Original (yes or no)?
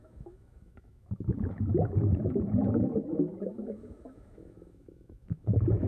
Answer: no